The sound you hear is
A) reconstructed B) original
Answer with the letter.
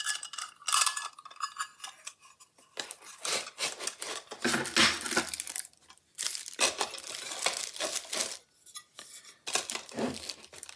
B